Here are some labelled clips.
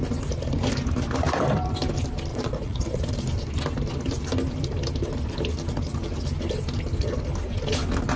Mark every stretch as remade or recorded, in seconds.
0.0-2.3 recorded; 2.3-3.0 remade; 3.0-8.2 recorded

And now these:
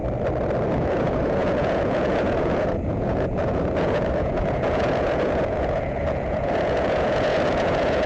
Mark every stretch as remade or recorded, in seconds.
0.0-0.7 recorded; 0.7-8.1 remade

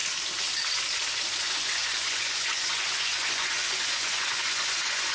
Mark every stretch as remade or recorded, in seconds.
0.0-1.4 recorded; 1.4-5.1 remade

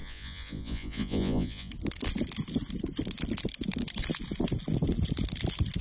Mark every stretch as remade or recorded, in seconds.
0.0-1.7 remade; 1.7-5.8 recorded

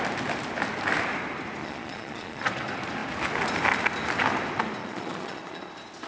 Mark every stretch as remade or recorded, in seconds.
0.0-1.6 recorded; 1.6-2.4 remade; 2.4-4.8 recorded; 4.8-5.6 remade; 5.6-6.1 recorded

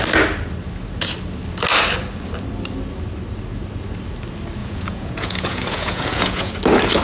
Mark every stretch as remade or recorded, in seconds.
0.0-4.6 recorded; 4.6-6.5 remade; 6.5-7.0 recorded